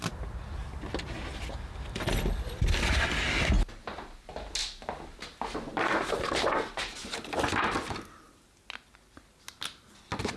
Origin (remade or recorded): recorded